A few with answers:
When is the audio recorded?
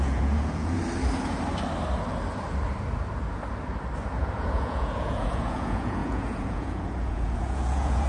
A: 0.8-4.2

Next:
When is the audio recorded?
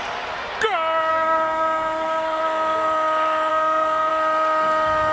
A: 0.0-1.1; 2.4-3.5; 4.1-5.1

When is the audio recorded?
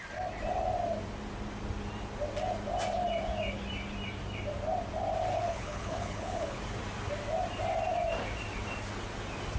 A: 0.0-5.3; 6.6-9.6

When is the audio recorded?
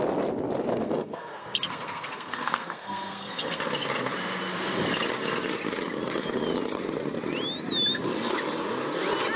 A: 0.0-0.7; 3.6-9.4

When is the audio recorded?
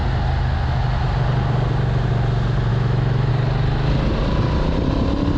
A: 0.0-2.7; 3.3-5.4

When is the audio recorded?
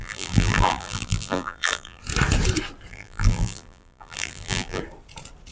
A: 2.0-2.9; 4.8-5.5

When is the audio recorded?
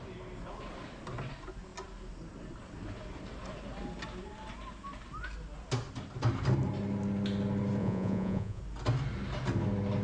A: 0.0-7.8; 8.6-10.0